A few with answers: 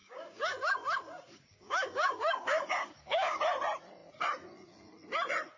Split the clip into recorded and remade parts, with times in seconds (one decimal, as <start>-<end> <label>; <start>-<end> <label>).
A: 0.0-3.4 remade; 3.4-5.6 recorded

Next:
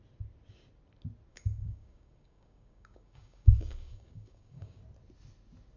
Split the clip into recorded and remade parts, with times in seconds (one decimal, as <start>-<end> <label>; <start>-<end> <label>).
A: 0.0-1.3 recorded; 1.3-4.8 remade; 4.8-5.8 recorded

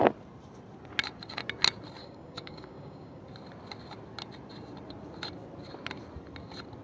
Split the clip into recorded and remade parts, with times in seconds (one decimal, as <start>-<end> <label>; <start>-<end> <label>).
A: 0.0-2.0 recorded; 2.0-3.2 remade; 3.2-6.8 recorded